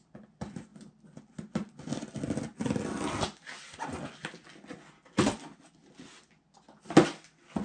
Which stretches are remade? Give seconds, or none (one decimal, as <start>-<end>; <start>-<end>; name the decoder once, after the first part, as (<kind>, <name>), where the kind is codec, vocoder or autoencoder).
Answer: none